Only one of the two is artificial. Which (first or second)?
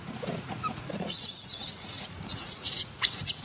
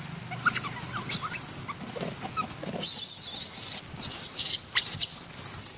first